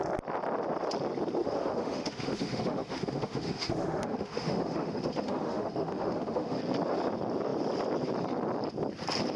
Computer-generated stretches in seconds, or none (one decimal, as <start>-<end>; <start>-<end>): 1.4-6.6